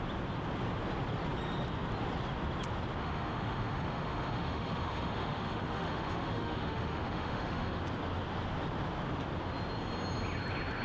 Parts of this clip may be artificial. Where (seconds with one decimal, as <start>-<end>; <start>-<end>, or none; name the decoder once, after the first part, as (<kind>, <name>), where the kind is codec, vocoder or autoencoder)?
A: 3.0-7.8 (autoencoder, DAC-VAE)